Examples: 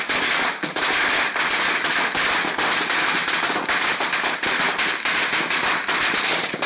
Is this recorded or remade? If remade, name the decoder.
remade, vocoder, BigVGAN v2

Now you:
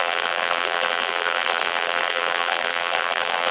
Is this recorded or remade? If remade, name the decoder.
remade, vocoder, BigVGAN v2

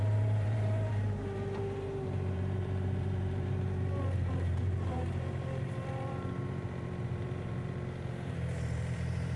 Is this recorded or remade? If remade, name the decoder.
remade, vocoder, BigVGAN v2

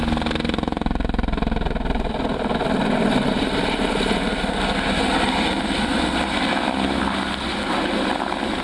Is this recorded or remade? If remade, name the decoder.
recorded